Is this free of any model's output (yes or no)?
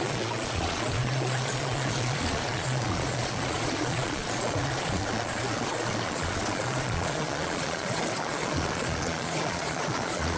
no